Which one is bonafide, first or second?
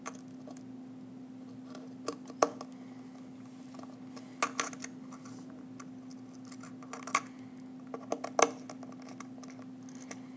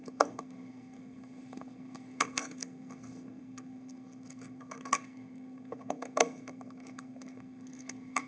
first